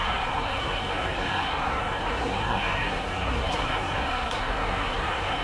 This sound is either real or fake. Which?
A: fake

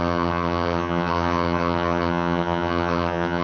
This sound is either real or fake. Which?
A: fake